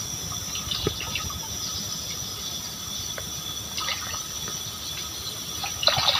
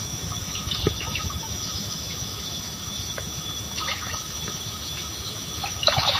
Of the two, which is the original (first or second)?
first